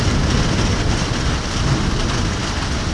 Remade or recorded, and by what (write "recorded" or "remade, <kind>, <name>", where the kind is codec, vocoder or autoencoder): recorded